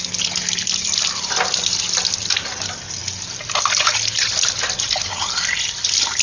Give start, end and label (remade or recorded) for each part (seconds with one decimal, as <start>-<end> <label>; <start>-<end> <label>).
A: 0.0-6.2 recorded

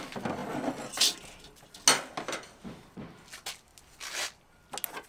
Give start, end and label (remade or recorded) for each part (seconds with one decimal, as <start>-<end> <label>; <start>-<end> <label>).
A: 0.0-5.1 recorded

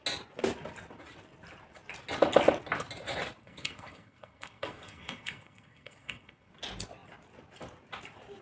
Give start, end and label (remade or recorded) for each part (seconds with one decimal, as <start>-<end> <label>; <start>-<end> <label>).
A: 0.0-3.4 recorded; 3.4-6.5 remade; 6.5-8.4 recorded

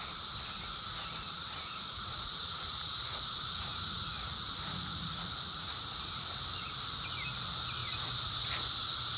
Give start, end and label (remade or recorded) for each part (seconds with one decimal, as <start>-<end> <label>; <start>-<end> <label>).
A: 0.0-1.4 recorded; 1.4-6.1 remade; 6.1-7.8 recorded; 7.8-8.5 remade; 8.5-9.2 recorded